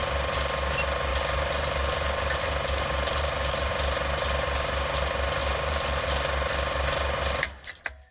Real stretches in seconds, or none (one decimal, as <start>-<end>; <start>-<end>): 0.0-1.1; 3.7-5.4; 6.0-8.1